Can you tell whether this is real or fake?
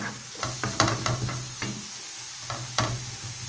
real